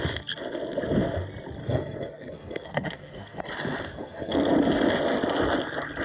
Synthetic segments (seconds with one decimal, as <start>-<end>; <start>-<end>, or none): 1.6-3.4; 3.9-4.5